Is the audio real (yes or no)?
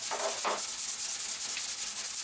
yes